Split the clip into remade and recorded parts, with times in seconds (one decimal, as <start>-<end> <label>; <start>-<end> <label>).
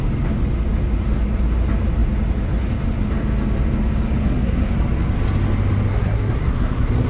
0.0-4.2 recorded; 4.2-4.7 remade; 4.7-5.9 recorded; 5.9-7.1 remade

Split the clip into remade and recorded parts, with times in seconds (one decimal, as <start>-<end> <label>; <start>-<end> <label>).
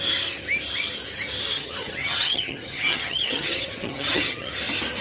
0.0-1.5 recorded; 1.5-4.5 remade; 4.5-5.0 recorded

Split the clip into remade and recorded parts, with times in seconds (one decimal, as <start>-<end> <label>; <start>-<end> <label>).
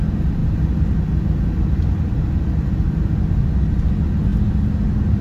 0.0-5.2 recorded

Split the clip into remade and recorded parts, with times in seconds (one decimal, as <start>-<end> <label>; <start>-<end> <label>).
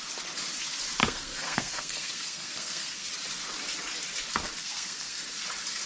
0.0-1.0 recorded; 1.0-3.1 remade; 3.1-4.6 recorded; 4.6-5.2 remade; 5.2-5.9 recorded